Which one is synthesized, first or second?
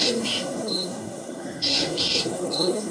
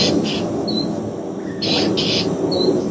first